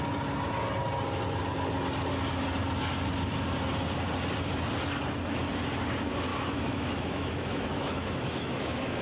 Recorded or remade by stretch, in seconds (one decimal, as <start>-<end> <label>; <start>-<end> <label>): 0.0-6.3 recorded; 6.3-9.0 remade